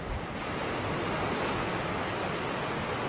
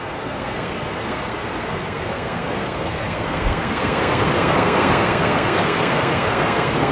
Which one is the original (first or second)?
first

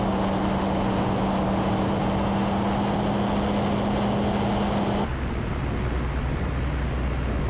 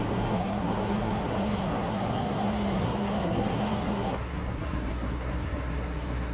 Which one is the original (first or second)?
first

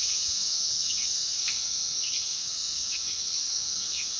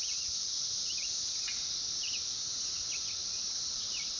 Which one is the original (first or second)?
second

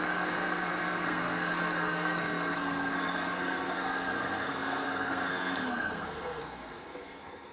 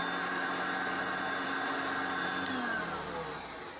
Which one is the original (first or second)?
second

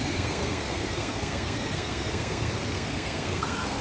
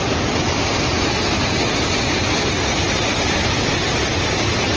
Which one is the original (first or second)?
second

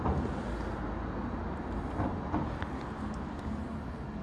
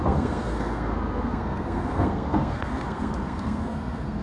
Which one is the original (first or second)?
first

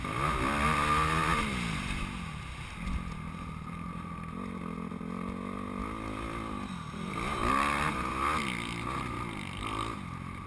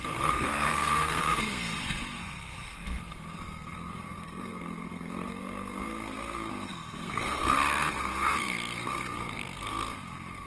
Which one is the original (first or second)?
first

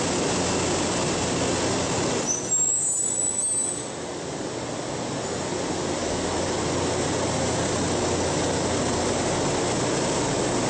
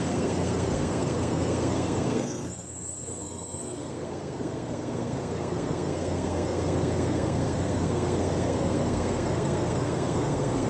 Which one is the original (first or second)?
first